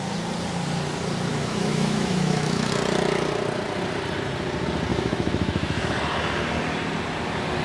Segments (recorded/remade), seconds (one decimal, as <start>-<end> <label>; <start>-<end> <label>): 0.0-1.3 recorded; 1.3-2.7 remade; 2.7-4.9 recorded; 4.9-5.9 remade; 5.9-7.6 recorded